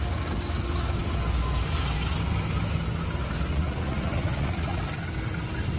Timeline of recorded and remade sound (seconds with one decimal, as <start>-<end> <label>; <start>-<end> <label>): 0.0-3.5 recorded; 3.5-4.8 remade; 4.8-5.8 recorded